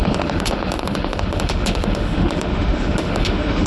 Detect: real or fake fake